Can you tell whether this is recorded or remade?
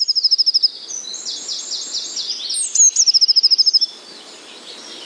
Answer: recorded